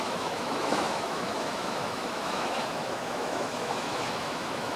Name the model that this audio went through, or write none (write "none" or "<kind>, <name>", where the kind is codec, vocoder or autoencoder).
autoencoder, DAC-VAE